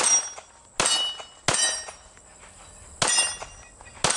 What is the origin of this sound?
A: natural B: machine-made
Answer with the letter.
A